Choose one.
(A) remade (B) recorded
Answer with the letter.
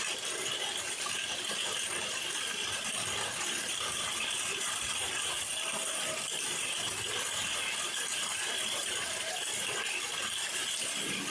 B